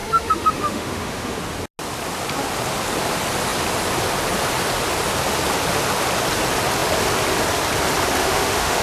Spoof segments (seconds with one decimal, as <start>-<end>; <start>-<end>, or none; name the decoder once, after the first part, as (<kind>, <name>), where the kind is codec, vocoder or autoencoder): 0.0-1.4 (autoencoder, DAC-VAE); 8.2-8.8